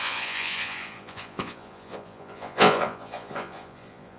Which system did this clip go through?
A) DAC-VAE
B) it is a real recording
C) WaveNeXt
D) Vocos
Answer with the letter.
D